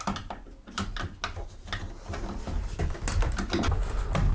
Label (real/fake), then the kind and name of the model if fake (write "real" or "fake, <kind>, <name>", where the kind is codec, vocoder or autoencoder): real